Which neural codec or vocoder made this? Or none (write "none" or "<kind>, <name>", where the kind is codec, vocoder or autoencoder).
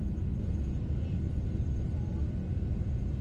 none